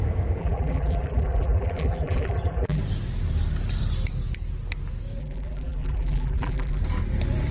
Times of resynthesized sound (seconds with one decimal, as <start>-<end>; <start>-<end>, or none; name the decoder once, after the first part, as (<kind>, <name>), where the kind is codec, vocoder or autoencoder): 0.4-2.8 (vocoder, BigVGAN v2); 5.2-6.8

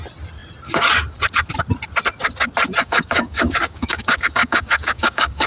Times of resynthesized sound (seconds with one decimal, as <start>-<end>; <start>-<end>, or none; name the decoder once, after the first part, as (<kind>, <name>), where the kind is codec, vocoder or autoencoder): 2.8-5.5 (codec, DAC)

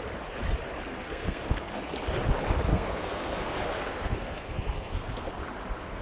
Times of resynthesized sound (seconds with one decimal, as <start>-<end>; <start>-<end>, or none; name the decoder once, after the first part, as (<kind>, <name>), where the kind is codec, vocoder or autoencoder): 0.9-1.9 (codec, SNAC); 2.7-5.3

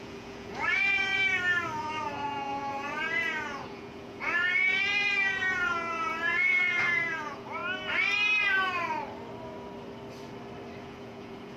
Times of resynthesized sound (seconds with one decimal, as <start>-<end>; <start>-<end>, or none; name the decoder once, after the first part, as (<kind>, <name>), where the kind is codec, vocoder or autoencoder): 0.0-1.2 (vocoder, Vocos); 1.8-7.6; 10.8-11.6

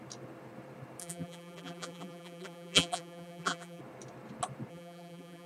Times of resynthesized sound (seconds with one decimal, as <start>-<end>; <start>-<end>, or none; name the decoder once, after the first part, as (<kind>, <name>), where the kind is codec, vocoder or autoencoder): 1.0-3.8 (vocoder, BigVGAN v2); 4.7-5.5

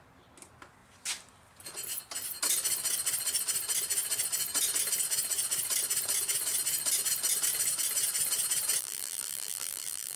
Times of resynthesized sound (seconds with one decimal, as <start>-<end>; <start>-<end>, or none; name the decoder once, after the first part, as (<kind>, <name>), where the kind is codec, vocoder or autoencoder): 8.8-10.2 (vocoder, BigVGAN v2)